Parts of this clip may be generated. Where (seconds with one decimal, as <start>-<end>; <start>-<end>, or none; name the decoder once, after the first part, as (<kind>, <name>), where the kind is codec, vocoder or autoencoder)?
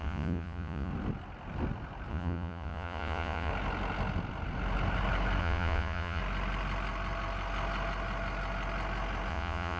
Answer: 0.0-0.9 (vocoder, Vocos); 2.1-3.5; 5.4-6.2; 9.3-9.8